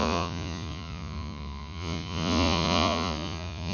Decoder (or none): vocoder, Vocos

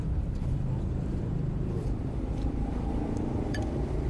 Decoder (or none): vocoder, BigVGAN v2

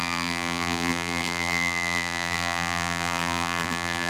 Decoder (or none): vocoder, BigVGAN v2